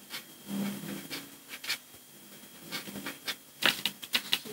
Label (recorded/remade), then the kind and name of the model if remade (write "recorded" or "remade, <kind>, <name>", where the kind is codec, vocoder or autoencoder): recorded